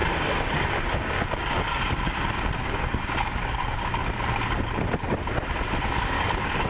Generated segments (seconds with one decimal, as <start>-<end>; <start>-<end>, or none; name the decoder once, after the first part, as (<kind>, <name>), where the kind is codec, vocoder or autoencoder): 0.0-4.0 (codec, DAC); 5.8-6.7